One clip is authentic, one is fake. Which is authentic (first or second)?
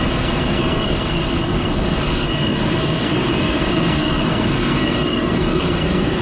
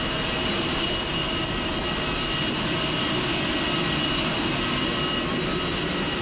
second